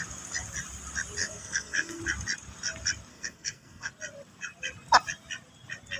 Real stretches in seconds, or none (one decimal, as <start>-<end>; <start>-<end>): 0.0-1.2; 2.0-3.1; 3.9-6.0